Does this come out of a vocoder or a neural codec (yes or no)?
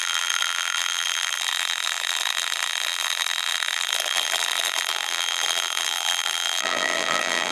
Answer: yes